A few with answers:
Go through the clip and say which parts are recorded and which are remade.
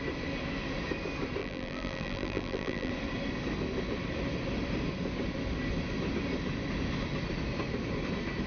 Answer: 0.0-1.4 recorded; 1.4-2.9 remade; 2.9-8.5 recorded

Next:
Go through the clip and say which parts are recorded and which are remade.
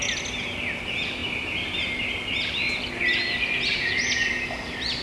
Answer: 0.0-5.0 recorded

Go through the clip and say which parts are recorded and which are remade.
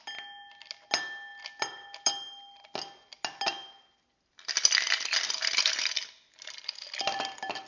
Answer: 0.0-7.7 recorded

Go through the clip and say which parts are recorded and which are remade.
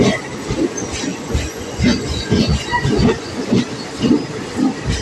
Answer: 0.0-1.1 recorded; 1.1-3.6 remade; 3.6-5.0 recorded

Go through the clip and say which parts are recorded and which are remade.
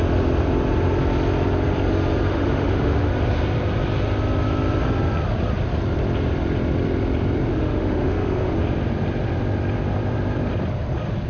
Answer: 0.0-2.3 recorded; 2.3-3.1 remade; 3.1-7.5 recorded; 7.5-8.5 remade; 8.5-11.3 recorded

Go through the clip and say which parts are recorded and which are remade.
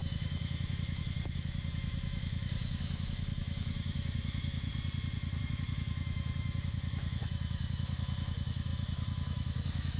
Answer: 0.0-4.7 remade; 4.7-5.4 recorded; 5.4-10.0 remade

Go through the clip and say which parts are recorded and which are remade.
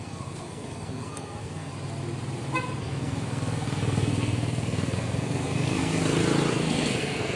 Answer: 0.0-1.7 remade; 1.7-2.8 recorded; 2.8-6.0 remade; 6.0-6.5 recorded; 6.5-7.4 remade